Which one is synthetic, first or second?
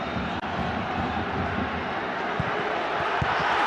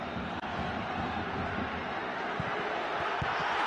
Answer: first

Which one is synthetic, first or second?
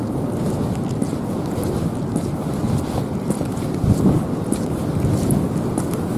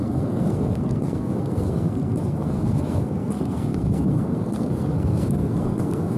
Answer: second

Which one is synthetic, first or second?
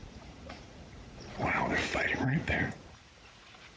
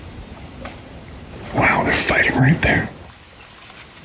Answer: first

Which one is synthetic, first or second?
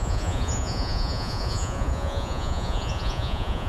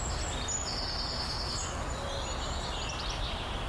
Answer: first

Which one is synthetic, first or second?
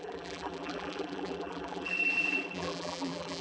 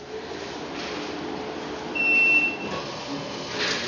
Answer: first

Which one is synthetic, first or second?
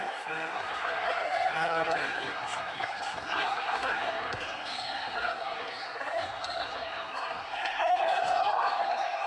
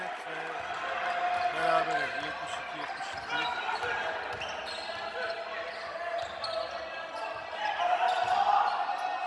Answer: first